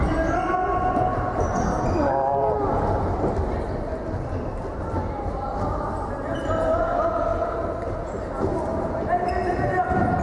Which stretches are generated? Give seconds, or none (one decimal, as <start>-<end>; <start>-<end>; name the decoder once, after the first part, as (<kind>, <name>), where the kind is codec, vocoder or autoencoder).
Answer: none